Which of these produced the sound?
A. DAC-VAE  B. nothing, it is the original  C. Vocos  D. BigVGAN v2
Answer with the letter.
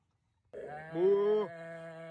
B